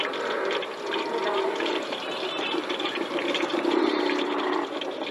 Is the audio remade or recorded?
remade